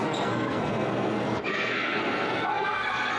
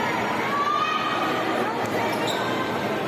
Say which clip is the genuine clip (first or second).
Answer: second